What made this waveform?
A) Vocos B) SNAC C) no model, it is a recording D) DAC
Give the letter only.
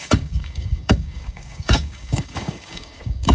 D